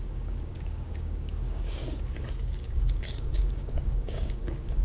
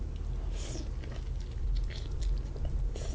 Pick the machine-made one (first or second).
first